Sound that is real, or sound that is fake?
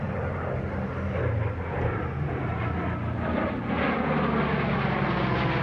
real